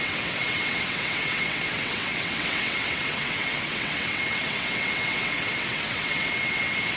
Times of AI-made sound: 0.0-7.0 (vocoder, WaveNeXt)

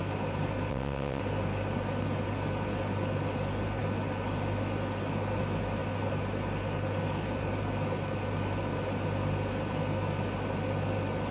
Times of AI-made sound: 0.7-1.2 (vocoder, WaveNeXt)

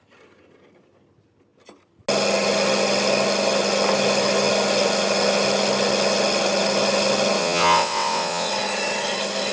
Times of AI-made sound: 7.4-8.5 (vocoder, WaveNeXt)

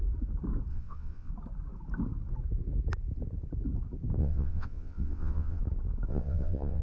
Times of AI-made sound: 0.7-1.3 (vocoder, WaveNeXt); 4.2-5.6; 6.1-6.8

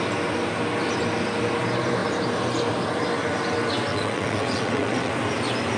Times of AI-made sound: 3.9-5.1 (vocoder, WaveNeXt)

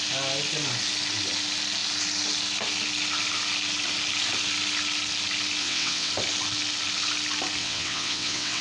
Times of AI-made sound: 5.6-6.1 (vocoder, WaveNeXt); 7.6-8.6